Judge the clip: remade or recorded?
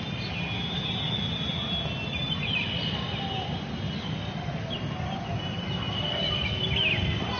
recorded